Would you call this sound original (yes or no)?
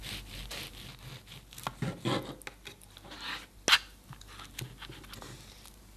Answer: yes